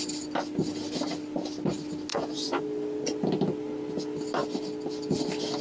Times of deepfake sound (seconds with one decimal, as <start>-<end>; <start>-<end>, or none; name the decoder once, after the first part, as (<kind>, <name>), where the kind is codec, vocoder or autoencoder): 2.1-2.6 (vocoder, Vocos)